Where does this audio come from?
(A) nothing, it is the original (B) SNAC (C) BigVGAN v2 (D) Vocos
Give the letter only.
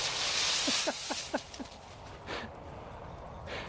A